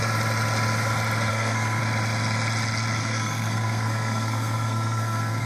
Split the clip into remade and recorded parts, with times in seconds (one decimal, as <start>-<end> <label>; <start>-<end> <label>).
0.0-1.3 recorded; 1.3-1.8 remade; 1.8-3.0 recorded; 3.0-5.5 remade